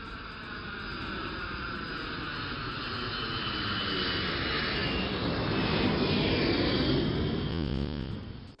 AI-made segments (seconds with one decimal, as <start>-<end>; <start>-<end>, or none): 7.5-8.1